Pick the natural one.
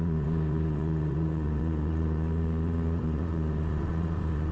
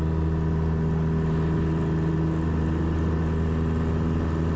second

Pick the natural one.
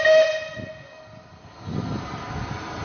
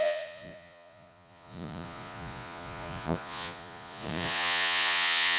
first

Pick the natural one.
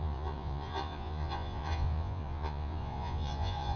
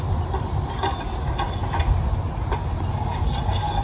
second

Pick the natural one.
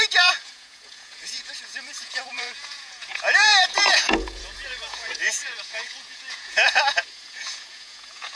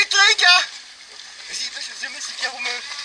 second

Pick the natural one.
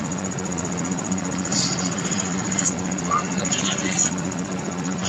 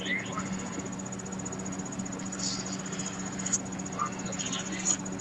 second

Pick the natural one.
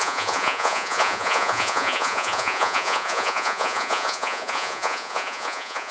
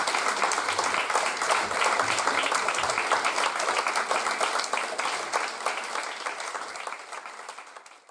second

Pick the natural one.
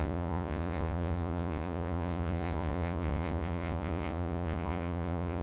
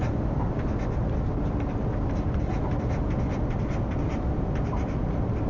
second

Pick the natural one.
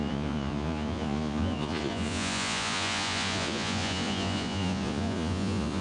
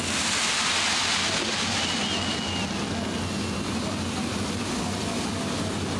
second